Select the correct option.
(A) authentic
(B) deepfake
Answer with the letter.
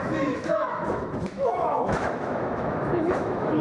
B